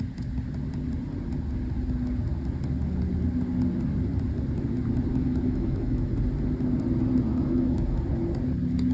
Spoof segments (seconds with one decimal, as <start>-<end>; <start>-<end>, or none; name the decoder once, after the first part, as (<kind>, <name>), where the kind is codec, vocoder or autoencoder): 5.1-6.1 (autoencoder, DAC-VAE); 7.3-8.0